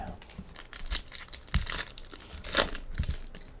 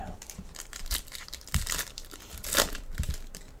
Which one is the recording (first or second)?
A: first